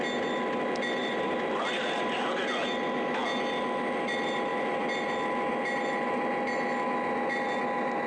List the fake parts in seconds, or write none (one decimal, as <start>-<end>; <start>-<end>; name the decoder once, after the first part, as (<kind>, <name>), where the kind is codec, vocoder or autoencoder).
1.0-2.5 (vocoder, BigVGAN v2)